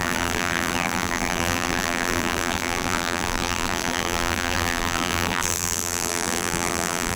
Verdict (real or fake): fake